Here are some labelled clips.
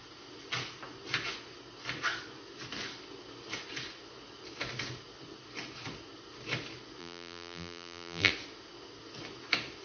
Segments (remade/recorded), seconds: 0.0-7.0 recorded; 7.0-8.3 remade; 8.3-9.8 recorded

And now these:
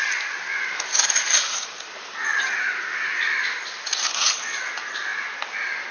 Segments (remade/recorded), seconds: 0.0-5.9 recorded